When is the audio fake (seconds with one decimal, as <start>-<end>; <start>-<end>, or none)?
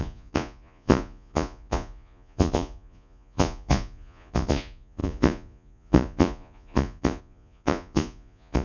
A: 0.0-8.6